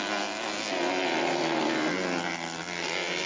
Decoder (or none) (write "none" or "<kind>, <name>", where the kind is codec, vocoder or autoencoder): none